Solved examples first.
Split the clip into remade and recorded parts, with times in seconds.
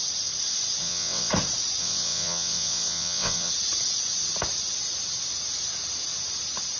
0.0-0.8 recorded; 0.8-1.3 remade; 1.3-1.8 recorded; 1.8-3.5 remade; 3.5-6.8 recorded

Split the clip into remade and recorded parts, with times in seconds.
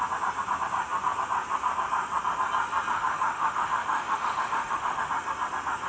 0.0-2.9 recorded; 2.9-5.1 remade; 5.1-5.9 recorded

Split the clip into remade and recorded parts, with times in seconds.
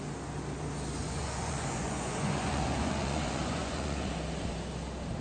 0.0-1.0 recorded; 1.0-4.1 remade; 4.1-5.2 recorded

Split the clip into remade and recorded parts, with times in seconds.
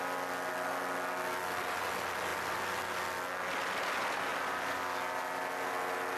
0.0-6.2 recorded